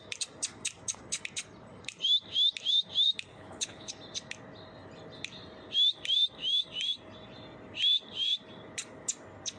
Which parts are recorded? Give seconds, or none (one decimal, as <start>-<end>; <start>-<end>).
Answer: 0.0-3.3; 3.9-9.6